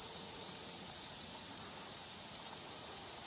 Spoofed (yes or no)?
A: yes